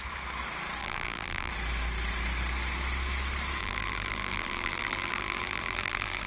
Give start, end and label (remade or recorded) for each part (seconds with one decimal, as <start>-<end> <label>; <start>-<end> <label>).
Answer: 0.0-0.8 recorded; 0.8-1.5 remade; 1.5-3.6 recorded; 3.6-6.3 remade